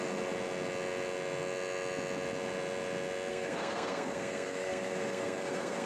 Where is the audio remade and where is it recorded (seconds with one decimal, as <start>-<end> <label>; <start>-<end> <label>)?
0.0-3.3 recorded; 3.3-5.9 remade